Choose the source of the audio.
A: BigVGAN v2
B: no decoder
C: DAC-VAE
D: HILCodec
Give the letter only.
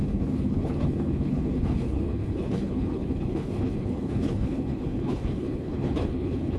D